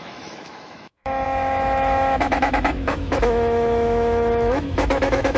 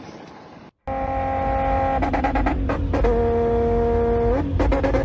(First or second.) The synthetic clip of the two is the first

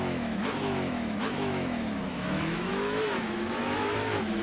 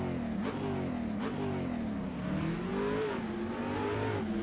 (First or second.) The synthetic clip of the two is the first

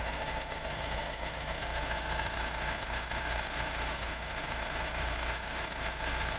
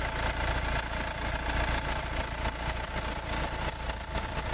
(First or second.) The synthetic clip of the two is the first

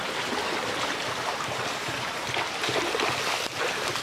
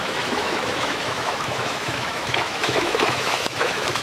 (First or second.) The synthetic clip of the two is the second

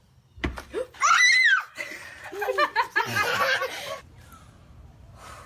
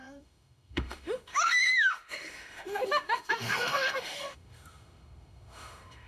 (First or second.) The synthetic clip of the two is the second